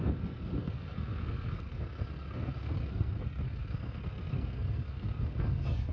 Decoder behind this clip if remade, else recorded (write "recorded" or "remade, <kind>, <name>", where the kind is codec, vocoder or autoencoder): remade, codec, SNAC